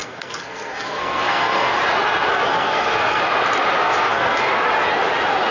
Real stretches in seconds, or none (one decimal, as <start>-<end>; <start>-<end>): 1.8-2.3; 3.2-3.8; 4.5-5.5